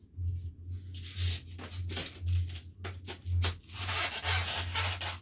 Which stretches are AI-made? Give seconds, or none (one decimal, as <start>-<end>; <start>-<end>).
none

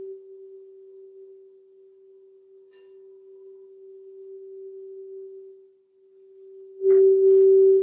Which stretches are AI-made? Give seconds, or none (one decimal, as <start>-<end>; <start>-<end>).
none

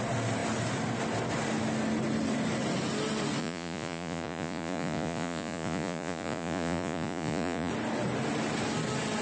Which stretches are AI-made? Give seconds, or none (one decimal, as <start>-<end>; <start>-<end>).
3.4-7.7

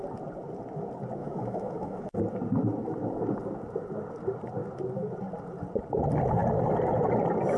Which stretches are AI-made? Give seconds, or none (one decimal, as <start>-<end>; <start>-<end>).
1.2-2.2

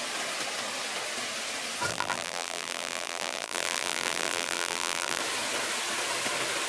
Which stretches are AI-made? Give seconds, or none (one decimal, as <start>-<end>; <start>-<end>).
1.9-5.2

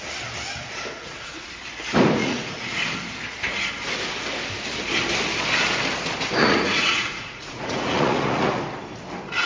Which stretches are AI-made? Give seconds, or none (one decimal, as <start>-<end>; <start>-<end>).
0.9-1.5; 2.2-2.8; 6.4-8.6

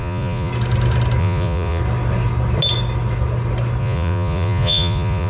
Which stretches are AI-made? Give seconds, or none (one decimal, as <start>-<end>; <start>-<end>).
0.0-0.5; 1.2-1.8; 3.8-5.3

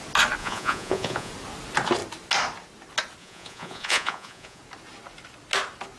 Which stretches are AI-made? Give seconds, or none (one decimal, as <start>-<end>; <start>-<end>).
0.4-1.3; 3.2-4.6